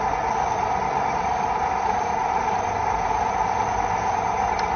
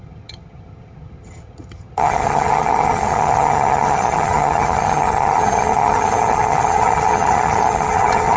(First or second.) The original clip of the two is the first